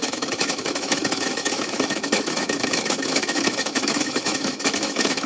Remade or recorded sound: remade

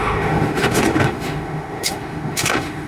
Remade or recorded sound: remade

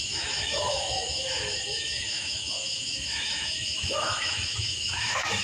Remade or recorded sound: remade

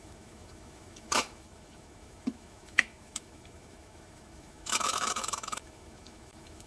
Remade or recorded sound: remade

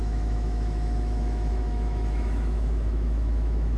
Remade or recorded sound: remade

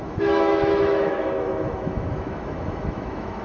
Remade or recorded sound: remade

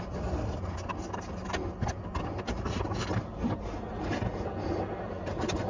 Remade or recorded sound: recorded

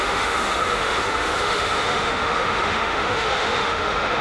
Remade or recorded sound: remade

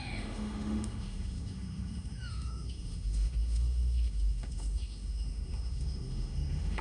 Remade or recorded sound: remade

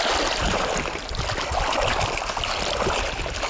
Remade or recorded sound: recorded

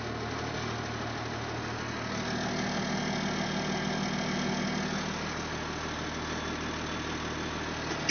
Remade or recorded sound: recorded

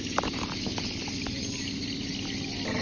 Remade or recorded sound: recorded